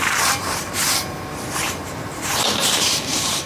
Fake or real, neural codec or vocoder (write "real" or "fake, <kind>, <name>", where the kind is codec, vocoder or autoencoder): fake, vocoder, BigVGAN v2